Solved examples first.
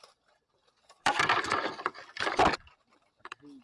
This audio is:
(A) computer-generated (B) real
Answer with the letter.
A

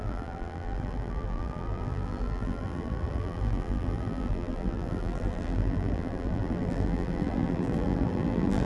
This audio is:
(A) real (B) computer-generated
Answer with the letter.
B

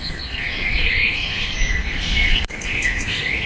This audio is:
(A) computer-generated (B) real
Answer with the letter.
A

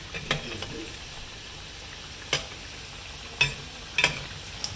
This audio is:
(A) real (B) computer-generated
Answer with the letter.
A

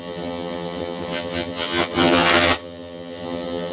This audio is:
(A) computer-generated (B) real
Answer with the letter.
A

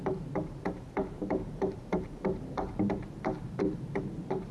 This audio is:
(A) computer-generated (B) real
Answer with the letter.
A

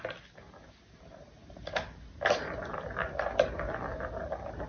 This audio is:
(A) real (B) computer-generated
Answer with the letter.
A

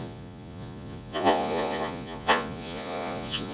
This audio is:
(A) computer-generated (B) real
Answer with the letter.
A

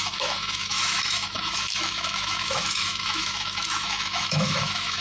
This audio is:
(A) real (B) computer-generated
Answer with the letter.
B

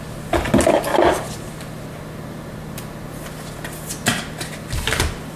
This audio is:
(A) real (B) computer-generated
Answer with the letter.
A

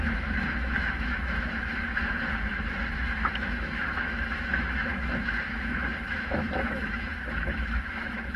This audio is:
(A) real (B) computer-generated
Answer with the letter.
B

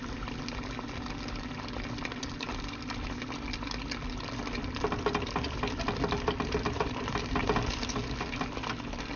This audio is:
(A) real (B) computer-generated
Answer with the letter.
A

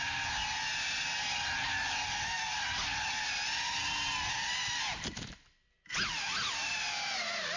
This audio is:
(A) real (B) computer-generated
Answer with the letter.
A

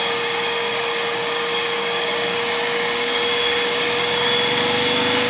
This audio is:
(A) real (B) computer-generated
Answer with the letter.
B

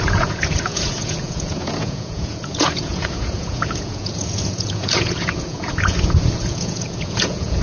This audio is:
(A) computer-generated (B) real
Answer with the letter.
A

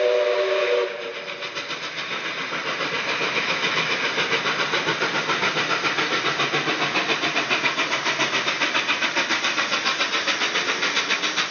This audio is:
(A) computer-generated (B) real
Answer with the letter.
B